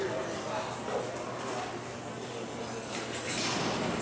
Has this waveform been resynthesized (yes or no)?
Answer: no